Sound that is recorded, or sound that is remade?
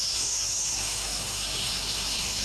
remade